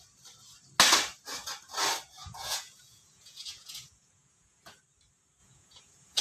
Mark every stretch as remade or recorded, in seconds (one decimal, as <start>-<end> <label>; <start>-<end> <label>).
0.0-2.2 recorded; 2.2-4.8 remade; 4.8-5.4 recorded; 5.4-6.2 remade